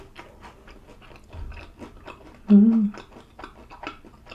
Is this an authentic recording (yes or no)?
yes